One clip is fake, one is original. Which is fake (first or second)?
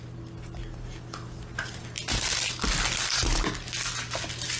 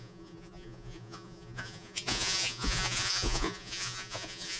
second